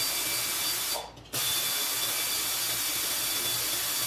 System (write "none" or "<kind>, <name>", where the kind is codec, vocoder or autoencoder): none